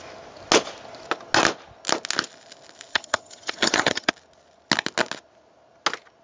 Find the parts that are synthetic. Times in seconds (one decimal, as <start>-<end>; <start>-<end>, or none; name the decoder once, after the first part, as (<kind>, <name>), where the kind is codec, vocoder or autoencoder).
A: 2.9-4.1 (vocoder, HiFi-GAN)